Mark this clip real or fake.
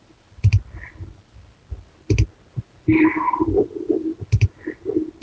real